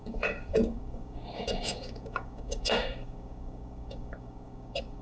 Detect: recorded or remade remade